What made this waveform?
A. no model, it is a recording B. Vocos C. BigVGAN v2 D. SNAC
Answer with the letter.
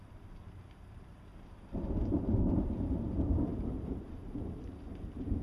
C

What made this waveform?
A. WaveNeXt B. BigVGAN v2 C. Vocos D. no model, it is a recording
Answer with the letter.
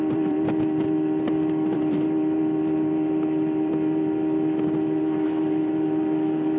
B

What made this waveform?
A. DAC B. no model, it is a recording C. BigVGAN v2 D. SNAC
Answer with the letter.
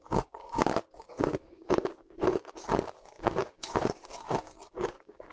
A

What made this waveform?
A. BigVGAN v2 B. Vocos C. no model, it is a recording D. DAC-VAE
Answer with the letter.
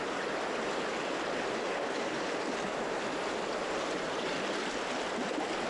C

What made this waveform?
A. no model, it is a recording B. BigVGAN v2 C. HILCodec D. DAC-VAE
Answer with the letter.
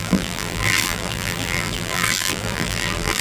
B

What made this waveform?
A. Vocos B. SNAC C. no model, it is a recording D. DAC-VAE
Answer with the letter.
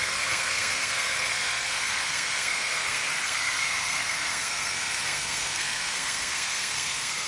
B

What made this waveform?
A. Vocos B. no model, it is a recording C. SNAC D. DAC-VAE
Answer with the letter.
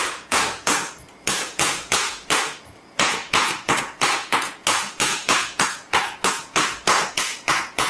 A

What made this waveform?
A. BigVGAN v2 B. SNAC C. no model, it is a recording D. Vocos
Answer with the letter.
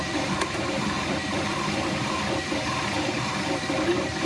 A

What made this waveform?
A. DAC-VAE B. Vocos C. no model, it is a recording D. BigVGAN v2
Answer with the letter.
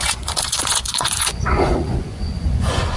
B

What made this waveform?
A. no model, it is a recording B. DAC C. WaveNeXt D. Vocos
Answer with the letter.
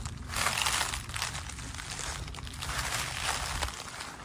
A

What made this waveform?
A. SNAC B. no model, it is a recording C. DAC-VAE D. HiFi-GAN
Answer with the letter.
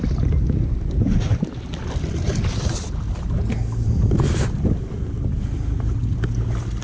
B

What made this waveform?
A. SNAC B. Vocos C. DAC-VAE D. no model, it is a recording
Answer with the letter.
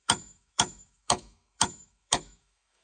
C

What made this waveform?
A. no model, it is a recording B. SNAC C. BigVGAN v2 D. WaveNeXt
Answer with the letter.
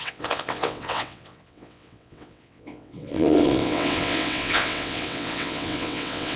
D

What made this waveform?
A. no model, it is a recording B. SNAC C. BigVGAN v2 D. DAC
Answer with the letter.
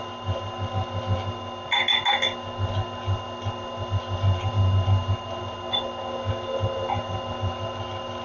A